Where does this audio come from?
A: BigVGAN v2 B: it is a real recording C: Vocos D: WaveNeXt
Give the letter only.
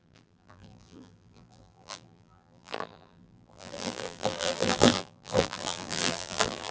A